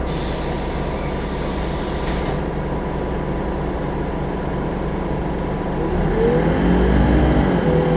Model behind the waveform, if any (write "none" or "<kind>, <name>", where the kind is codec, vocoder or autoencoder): none